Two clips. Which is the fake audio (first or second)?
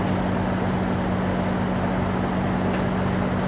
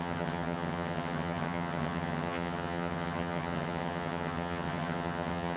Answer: second